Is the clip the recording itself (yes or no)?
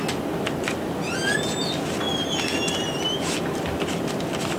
yes